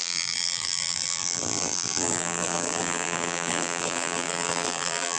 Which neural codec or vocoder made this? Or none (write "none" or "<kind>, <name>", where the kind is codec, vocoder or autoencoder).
vocoder, BigVGAN v2